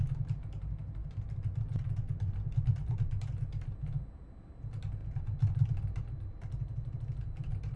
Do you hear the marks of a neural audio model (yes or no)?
no